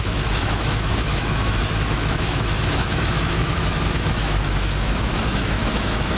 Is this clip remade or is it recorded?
remade